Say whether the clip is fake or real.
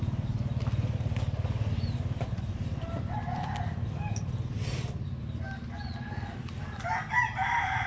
real